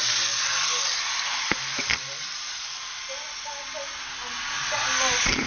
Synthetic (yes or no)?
no